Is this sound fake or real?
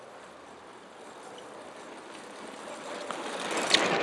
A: real